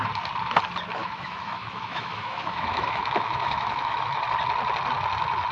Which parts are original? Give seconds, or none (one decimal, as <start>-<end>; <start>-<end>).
0.0-1.0; 4.2-5.5